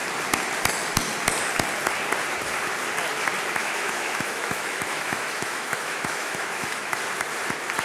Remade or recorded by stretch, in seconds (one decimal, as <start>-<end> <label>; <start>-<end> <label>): 0.0-3.6 recorded; 3.6-7.0 remade; 7.0-7.8 recorded